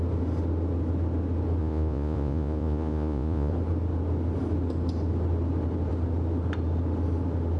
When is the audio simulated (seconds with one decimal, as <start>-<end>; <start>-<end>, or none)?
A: 1.6-3.5